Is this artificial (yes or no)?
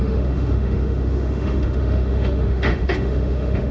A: yes